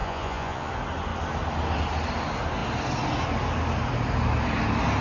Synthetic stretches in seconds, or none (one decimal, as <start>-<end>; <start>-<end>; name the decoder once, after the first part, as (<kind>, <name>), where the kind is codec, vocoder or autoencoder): 0.0-0.7 (vocoder, Vocos)